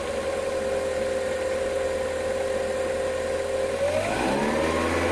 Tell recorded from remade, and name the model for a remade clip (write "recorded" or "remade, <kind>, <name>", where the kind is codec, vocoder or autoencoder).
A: recorded